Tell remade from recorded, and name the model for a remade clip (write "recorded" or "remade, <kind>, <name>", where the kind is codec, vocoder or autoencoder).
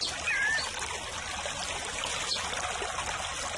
recorded